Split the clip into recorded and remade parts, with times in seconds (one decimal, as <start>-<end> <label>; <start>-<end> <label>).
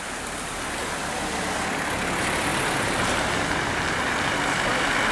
0.0-5.1 recorded